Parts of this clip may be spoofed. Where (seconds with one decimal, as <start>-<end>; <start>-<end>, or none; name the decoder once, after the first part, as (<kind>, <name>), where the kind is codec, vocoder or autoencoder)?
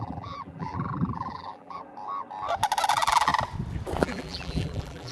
0.0-1.8 (vocoder, BigVGAN v2); 2.9-3.3; 4.0-5.1